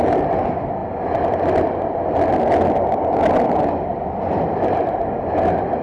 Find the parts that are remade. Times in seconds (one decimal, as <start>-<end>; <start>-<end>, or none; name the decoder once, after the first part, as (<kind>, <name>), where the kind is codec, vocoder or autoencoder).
none